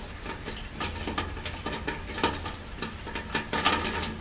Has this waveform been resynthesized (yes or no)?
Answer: no